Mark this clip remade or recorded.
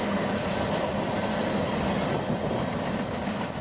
recorded